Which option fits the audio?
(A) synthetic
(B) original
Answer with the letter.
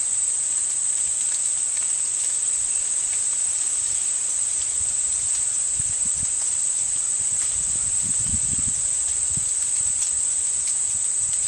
B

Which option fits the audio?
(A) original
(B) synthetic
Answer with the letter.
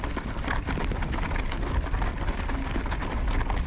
A